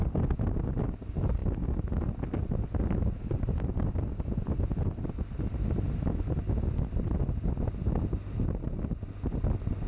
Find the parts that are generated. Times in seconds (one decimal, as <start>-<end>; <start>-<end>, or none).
none